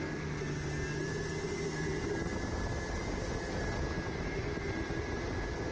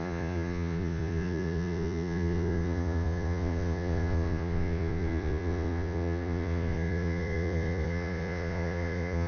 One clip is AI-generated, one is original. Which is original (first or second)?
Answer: first